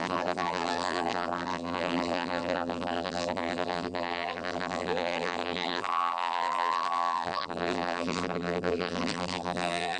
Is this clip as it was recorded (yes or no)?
no